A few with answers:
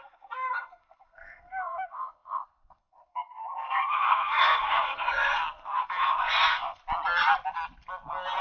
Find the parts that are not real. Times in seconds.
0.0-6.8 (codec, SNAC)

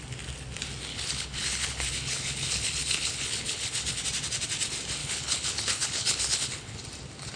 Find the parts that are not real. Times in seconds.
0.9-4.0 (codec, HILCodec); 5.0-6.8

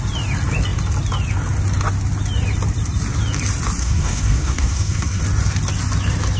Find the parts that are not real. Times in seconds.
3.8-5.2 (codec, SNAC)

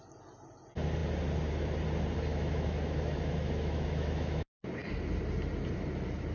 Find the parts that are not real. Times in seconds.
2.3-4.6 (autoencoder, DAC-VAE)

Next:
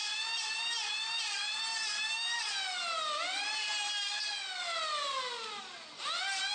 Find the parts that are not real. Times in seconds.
none

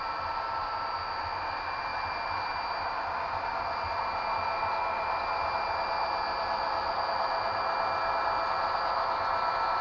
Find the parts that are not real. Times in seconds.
none

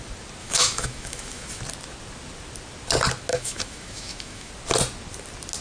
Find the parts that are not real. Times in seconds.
0.4-1.6 (autoencoder, DAC-VAE); 3.3-4.5

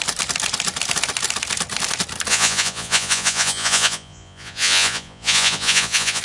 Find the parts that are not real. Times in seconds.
2.3-6.2 (vocoder, Vocos)